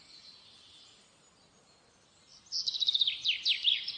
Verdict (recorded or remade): recorded